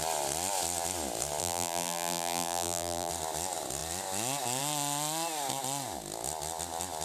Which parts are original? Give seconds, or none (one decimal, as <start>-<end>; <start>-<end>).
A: 0.0-1.4; 3.1-7.0